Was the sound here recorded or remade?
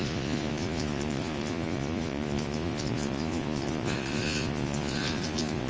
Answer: remade